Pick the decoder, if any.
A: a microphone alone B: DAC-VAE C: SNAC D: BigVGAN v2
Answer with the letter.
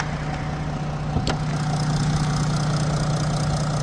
A